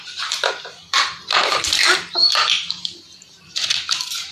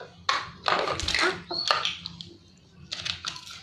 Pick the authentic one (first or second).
second